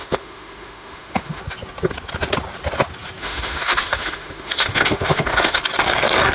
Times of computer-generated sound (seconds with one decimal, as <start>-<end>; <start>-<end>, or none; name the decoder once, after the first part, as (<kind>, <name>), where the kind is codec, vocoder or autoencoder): 0.0-1.4 (autoencoder, DAC-VAE); 3.2-5.6